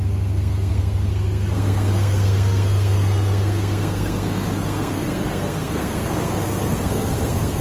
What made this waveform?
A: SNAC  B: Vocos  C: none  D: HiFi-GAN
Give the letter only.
A